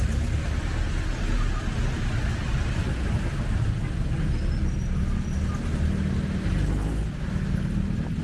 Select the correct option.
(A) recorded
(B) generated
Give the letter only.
A